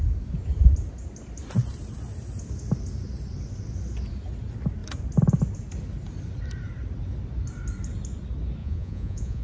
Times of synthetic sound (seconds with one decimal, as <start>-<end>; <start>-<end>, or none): 8.6-9.4

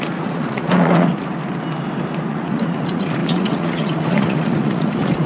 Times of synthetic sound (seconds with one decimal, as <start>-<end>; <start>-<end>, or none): 0.0-1.3; 2.3-5.3

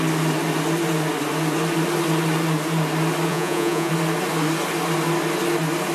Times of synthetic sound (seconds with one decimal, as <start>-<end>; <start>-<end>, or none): 3.3-3.9

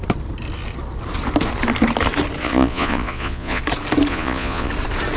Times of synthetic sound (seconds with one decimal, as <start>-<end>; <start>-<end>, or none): 2.4-3.6; 4.1-4.7

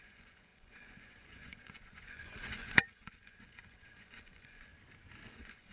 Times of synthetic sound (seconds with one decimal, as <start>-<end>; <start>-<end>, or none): 0.0-4.7; 5.3-5.7

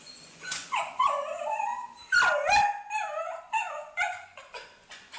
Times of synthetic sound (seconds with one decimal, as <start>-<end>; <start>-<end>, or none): 0.0-1.8; 3.4-5.2

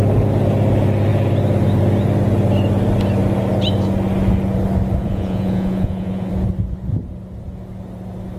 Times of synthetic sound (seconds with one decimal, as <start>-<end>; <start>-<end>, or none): 5.0-6.3

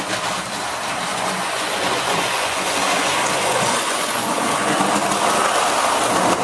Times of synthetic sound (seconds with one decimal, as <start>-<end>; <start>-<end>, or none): 1.1-4.8